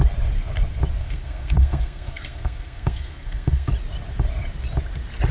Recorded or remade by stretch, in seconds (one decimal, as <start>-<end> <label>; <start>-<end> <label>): 0.0-1.0 recorded; 1.0-3.7 remade; 3.7-5.3 recorded